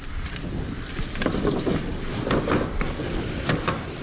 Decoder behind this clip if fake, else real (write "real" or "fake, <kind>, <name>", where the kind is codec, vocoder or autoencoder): real